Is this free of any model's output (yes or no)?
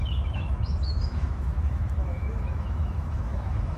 no